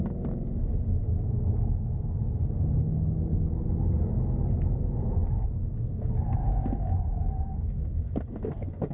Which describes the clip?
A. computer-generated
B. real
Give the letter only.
B